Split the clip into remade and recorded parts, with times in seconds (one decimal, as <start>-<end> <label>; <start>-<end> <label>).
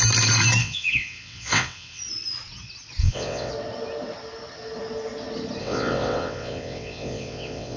0.0-0.6 recorded; 0.6-2.0 remade; 2.0-3.0 recorded; 3.0-3.5 remade; 3.5-5.6 recorded; 5.6-7.8 remade